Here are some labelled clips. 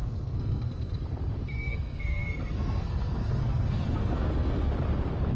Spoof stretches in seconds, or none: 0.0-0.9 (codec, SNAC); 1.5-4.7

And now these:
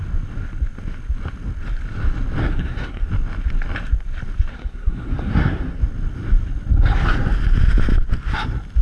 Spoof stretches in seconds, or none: 2.4-3.1 (codec, SNAC); 4.5-5.8

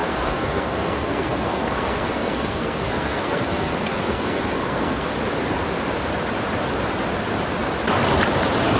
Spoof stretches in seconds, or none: 0.0-5.1 (codec, SNAC)

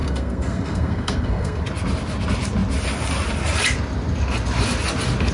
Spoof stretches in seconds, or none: 0.0-1.6 (codec, SNAC)

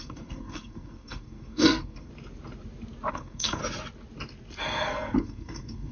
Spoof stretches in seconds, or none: 0.0-2.1 (codec, SNAC); 3.1-3.6; 4.6-5.9

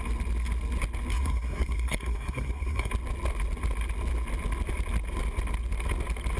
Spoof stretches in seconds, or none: 1.1-2.9 (codec, SNAC)

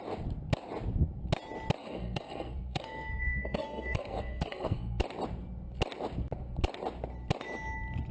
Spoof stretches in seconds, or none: 1.8-5.0 (codec, SNAC)

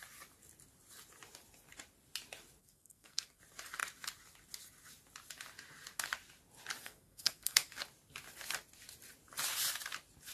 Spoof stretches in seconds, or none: 2.6-3.4 (codec, SNAC); 6.8-7.8